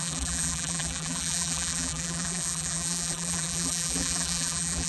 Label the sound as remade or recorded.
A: remade